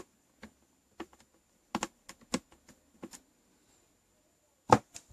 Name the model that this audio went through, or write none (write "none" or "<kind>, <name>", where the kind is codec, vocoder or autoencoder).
none